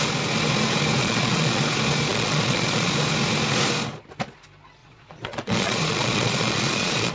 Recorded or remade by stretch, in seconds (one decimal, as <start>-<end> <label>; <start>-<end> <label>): 0.0-1.0 recorded; 1.0-1.6 remade; 1.6-2.1 recorded; 2.1-2.9 remade; 2.9-4.8 recorded; 4.8-7.1 remade